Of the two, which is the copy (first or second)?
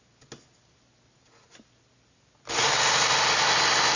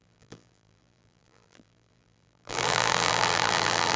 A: second